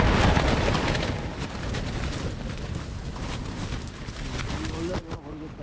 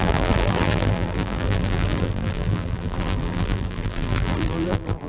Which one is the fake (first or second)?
second